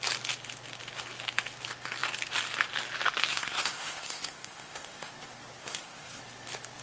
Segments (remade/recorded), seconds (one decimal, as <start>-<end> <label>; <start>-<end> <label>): 0.0-3.3 recorded; 3.3-5.1 remade; 5.1-5.6 recorded; 5.6-6.2 remade; 6.2-6.8 recorded